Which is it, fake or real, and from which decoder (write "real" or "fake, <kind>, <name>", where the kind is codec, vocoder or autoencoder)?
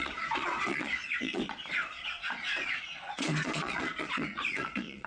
fake, vocoder, Vocos